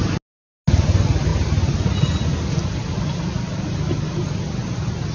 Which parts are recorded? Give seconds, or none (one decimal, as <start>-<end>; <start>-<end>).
0.0-5.1